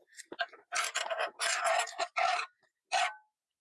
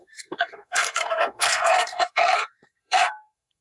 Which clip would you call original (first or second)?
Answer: first